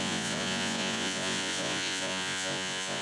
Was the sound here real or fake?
fake